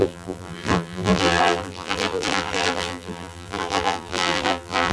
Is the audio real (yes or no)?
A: no